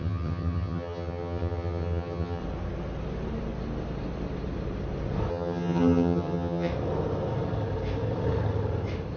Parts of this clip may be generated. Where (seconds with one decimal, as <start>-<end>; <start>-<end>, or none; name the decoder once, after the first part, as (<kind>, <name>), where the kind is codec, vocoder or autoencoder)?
0.0-2.4 (vocoder, HiFi-GAN); 5.3-6.7